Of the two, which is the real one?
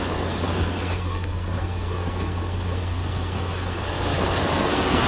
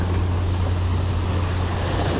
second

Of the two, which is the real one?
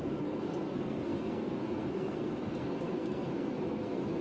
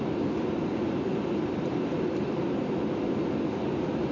second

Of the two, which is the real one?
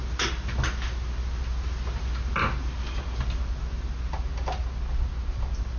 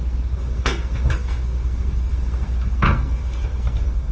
first